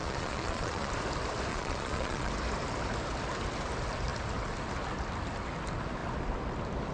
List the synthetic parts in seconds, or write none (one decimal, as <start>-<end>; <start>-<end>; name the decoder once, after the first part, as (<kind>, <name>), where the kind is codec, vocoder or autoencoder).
0.0-0.9 (vocoder, Vocos); 1.5-2.3